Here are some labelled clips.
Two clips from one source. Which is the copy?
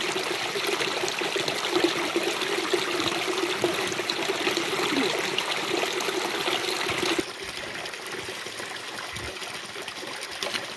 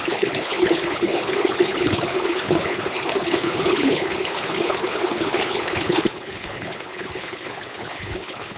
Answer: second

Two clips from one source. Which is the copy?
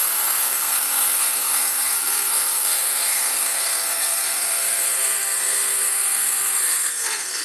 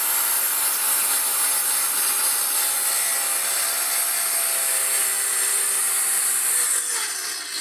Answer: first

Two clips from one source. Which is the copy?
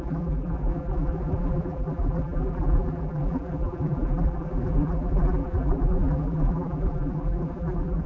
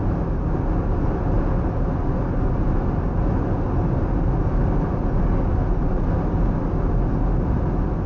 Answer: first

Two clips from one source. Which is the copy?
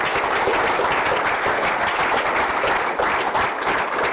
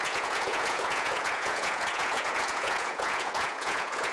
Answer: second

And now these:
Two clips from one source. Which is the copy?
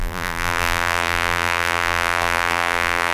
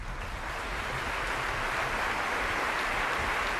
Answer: first